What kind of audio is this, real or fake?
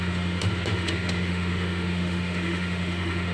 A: fake